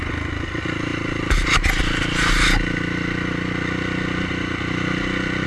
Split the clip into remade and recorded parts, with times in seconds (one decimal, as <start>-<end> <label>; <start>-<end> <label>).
0.0-5.5 recorded